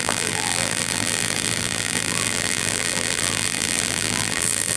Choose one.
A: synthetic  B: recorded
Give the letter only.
A